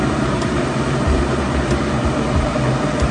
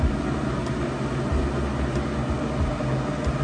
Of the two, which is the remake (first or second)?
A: first